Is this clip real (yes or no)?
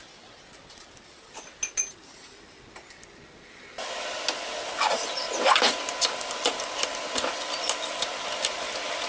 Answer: yes